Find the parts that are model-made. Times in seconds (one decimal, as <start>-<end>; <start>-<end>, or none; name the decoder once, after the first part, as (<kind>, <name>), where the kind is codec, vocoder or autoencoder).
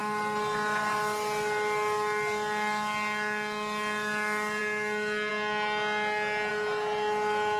none